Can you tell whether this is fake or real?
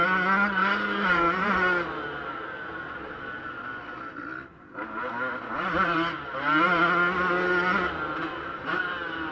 real